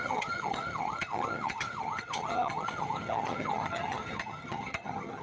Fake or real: fake